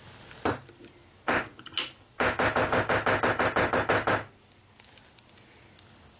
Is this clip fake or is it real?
real